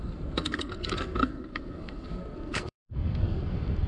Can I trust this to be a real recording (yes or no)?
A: no